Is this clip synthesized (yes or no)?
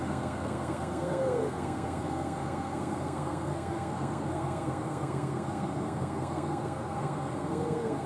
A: yes